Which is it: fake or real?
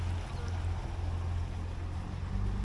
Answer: real